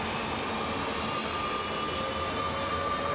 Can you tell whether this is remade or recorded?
recorded